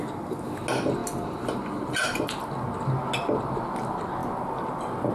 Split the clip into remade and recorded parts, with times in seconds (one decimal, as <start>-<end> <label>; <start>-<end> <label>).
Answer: 0.0-5.1 recorded